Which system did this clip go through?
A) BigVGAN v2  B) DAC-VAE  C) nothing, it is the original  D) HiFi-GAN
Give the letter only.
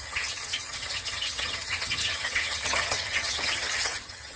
D